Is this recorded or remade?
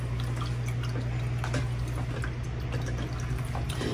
recorded